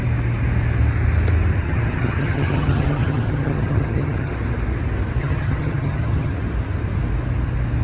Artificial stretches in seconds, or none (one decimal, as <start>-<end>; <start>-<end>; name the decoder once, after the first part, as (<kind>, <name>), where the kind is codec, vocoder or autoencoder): 1.6-4.3 (vocoder, HiFi-GAN); 5.2-6.3